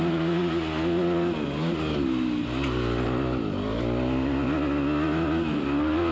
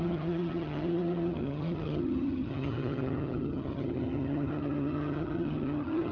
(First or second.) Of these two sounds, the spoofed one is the second